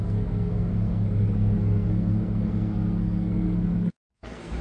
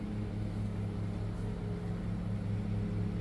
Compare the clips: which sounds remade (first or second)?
first